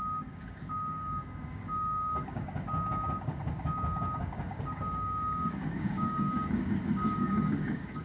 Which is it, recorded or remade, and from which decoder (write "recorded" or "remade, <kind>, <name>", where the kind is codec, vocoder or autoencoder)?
remade, codec, DAC